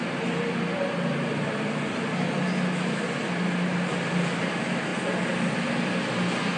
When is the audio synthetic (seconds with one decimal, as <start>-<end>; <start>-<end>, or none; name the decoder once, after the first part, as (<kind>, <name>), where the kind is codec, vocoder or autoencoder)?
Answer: none

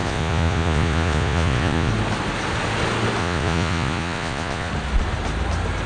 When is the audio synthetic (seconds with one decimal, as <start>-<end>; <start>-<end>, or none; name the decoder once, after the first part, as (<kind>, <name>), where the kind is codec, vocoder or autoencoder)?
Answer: 0.0-1.9 (vocoder, Vocos); 3.2-4.7

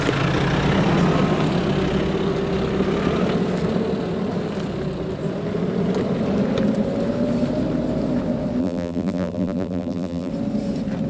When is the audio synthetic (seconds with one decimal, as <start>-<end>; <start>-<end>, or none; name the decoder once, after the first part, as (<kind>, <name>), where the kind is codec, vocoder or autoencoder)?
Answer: 8.6-10.3 (vocoder, BigVGAN v2)

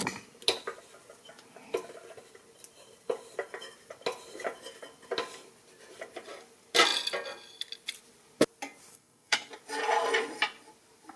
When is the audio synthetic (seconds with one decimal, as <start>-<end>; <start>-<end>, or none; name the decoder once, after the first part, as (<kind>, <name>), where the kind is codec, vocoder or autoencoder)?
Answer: 8.9-9.5 (codec, SNAC)

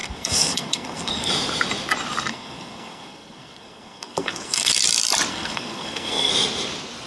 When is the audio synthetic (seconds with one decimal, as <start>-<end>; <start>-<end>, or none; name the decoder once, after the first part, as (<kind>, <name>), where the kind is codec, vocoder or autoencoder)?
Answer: 0.0-1.3 (codec, SNAC); 2.3-4.8; 5.3-6.3